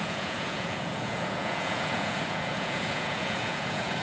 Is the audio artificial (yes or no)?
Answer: yes